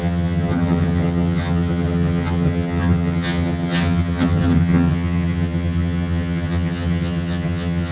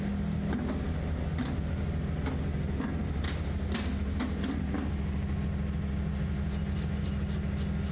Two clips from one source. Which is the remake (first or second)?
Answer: first